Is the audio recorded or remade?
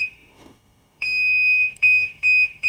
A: remade